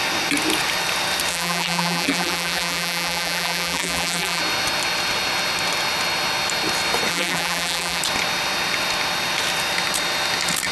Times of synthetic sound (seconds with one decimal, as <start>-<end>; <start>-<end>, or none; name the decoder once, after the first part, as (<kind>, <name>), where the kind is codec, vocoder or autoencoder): 1.3-4.4 (vocoder, BigVGAN v2); 7.1-8.0